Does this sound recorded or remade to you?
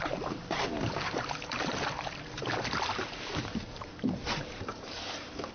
remade